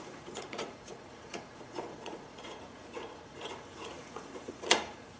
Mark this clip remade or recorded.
remade